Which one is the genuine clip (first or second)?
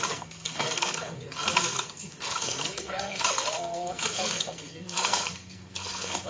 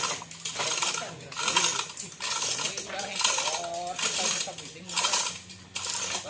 second